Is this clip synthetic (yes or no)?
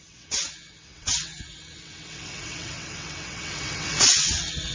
yes